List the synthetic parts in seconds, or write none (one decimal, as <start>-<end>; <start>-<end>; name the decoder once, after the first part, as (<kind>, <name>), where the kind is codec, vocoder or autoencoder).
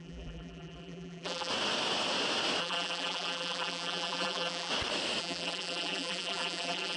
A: 0.0-1.5 (vocoder, BigVGAN v2); 2.6-4.7; 5.2-7.0